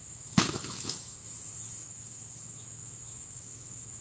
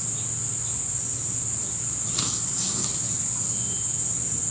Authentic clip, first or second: second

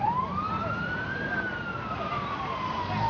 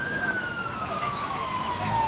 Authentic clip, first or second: first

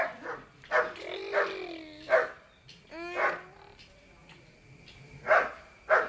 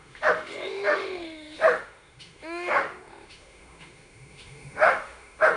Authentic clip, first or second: first